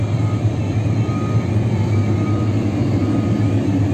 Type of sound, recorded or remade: recorded